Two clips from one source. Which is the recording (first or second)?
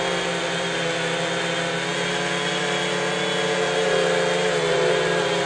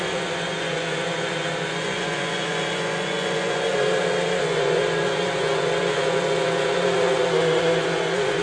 first